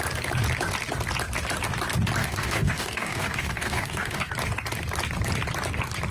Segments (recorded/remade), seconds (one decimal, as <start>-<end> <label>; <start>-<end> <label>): 0.0-2.2 recorded; 2.2-4.3 remade; 4.3-6.1 recorded